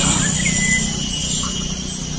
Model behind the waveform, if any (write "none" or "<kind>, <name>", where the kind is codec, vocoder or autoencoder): none